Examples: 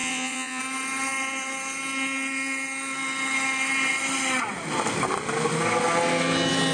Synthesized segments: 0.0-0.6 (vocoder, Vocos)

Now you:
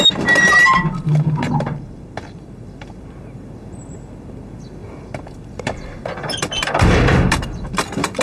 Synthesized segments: none

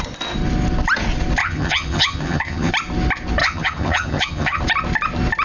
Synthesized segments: 1.4-2.7 (vocoder, HiFi-GAN); 3.4-4.6

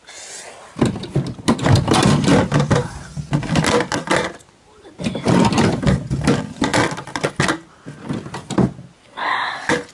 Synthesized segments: none

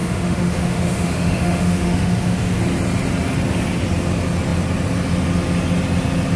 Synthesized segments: 0.0-2.6 (autoencoder, DAC-VAE)